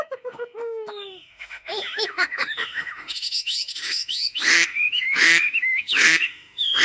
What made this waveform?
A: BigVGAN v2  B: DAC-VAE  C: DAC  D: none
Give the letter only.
B